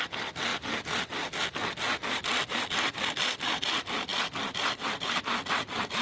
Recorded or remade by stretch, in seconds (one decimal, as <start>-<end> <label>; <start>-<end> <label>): 0.0-6.0 recorded